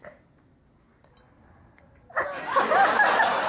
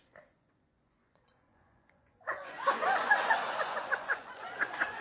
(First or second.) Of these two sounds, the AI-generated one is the second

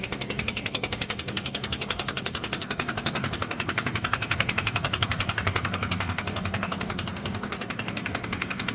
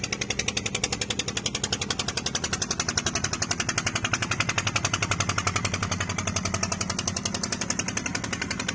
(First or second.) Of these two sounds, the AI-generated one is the first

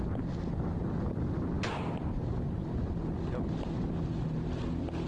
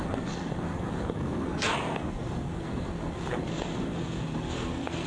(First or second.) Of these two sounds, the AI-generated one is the second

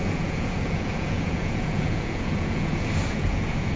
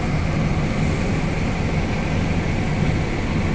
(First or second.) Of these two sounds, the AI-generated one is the first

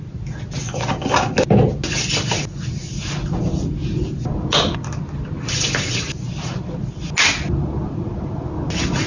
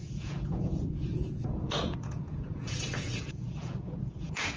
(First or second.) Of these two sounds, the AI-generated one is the second